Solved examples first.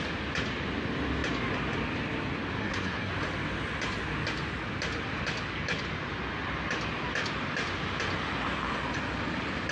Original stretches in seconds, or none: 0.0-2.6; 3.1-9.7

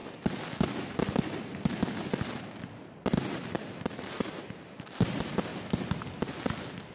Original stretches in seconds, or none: 0.0-4.0; 5.5-6.9

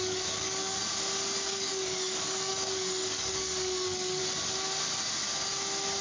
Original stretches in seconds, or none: 0.8-1.5; 4.2-6.0